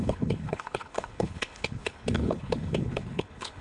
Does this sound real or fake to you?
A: fake